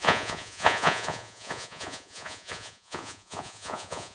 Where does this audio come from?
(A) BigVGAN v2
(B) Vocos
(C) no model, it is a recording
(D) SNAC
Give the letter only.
B